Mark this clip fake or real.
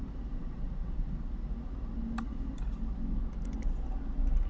real